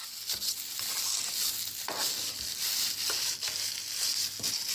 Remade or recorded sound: recorded